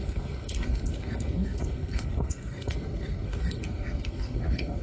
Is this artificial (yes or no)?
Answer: yes